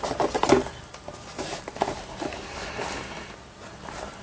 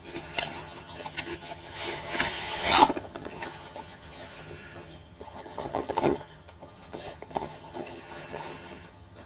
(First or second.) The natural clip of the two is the first